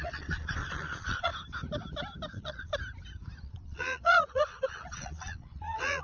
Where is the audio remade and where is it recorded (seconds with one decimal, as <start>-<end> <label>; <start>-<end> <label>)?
0.0-1.3 remade; 1.3-2.3 recorded; 2.3-2.7 remade; 2.7-3.4 recorded; 3.4-6.0 remade